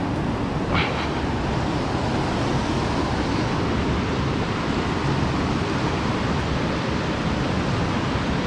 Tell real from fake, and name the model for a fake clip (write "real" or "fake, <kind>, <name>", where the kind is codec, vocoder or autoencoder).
real